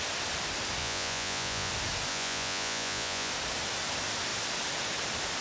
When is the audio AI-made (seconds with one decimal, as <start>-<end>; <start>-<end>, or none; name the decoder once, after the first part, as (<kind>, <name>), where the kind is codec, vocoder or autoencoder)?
0.8-1.7 (vocoder, Vocos); 2.1-3.3